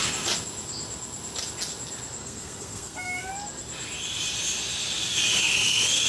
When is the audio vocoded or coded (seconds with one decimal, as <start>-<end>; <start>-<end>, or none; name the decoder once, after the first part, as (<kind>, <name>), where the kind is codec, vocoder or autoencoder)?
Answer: 2.2-3.3 (codec, SNAC); 5.4-6.1